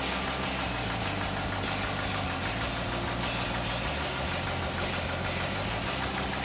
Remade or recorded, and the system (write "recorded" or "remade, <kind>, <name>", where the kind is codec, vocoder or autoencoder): recorded